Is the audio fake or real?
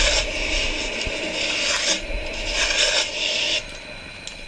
real